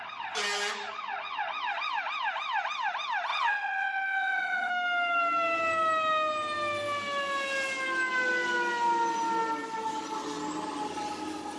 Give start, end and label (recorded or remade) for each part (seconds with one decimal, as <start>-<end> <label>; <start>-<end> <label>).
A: 0.0-3.3 recorded; 3.3-4.7 remade; 4.7-11.6 recorded